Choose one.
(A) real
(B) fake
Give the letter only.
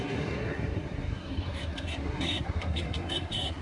B